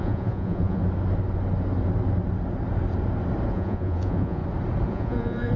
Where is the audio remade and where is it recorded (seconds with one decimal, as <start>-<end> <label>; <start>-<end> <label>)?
0.0-0.8 remade; 0.8-3.5 recorded; 3.5-4.4 remade; 4.4-4.9 recorded; 4.9-5.6 remade